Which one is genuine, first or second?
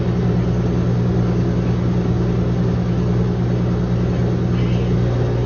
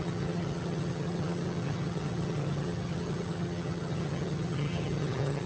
first